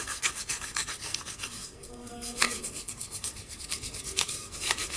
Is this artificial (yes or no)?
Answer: yes